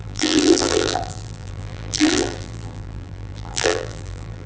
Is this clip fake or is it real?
fake